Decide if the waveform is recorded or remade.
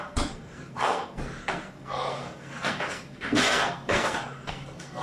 remade